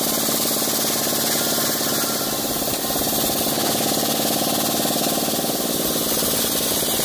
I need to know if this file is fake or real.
real